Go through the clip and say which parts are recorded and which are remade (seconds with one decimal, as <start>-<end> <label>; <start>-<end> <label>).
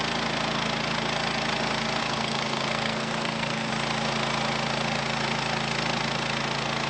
0.0-2.0 recorded; 2.0-3.7 remade; 3.7-6.9 recorded